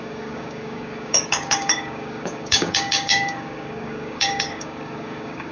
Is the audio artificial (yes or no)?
yes